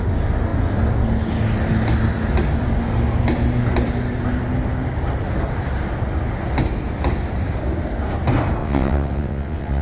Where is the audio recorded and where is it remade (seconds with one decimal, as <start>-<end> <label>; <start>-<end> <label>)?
0.0-8.6 recorded; 8.6-9.8 remade